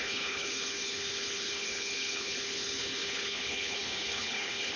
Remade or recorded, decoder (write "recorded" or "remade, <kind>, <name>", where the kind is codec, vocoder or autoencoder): remade, codec, HILCodec